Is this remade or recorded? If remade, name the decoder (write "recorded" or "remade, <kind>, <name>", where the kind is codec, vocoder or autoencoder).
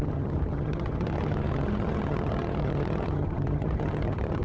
remade, vocoder, HiFi-GAN